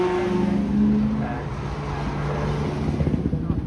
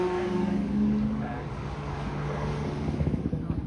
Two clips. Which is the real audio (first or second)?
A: first